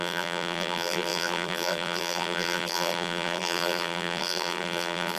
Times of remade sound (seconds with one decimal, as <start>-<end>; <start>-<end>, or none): 0.0-5.2